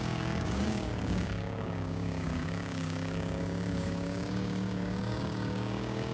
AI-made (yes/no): yes